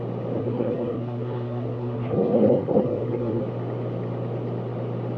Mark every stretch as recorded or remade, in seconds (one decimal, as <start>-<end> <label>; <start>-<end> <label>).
0.0-0.4 recorded; 0.4-3.4 remade; 3.4-5.2 recorded